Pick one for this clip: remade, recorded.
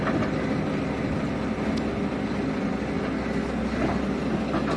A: recorded